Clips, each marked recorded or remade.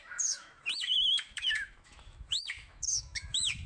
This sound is remade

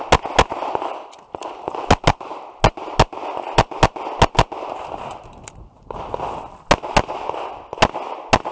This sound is recorded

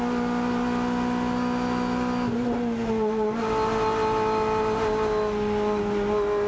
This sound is recorded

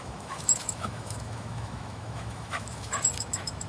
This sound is remade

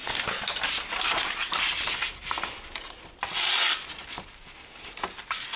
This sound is recorded